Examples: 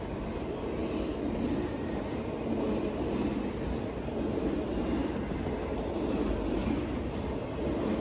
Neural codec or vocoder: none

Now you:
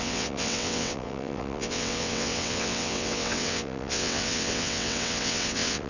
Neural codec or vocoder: vocoder, WaveNeXt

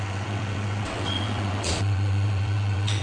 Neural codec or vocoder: vocoder, WaveNeXt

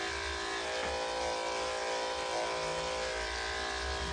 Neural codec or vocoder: none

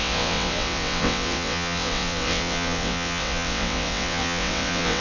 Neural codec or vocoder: vocoder, WaveNeXt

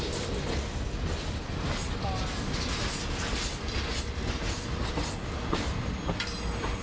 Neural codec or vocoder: none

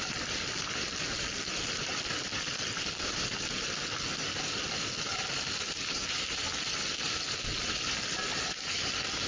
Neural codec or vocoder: none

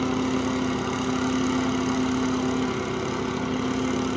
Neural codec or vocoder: none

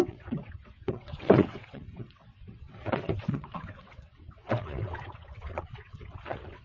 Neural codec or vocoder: vocoder, WaveNeXt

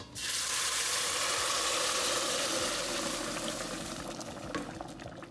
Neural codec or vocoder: none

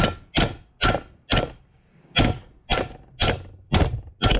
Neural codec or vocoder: none